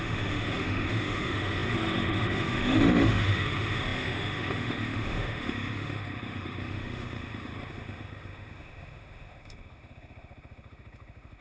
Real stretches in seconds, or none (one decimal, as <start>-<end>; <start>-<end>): none